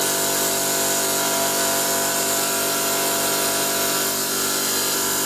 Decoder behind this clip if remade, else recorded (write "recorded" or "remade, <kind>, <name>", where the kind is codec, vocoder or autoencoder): recorded